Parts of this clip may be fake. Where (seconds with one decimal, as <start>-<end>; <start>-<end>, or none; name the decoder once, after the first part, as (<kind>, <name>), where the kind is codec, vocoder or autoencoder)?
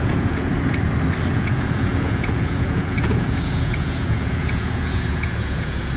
0.0-0.5 (vocoder, Vocos); 1.3-6.0